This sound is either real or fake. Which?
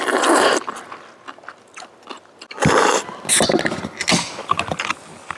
real